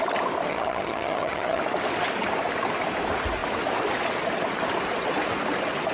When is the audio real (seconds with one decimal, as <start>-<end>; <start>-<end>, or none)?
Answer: 0.0-0.5; 1.6-5.9